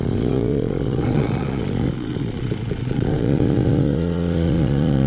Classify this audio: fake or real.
fake